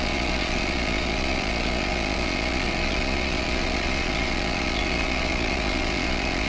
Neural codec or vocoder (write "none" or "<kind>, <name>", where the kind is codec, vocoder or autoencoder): vocoder, Vocos